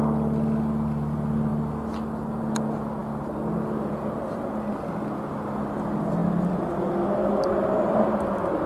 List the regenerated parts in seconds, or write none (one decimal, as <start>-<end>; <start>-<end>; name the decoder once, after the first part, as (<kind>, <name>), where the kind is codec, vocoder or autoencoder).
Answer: none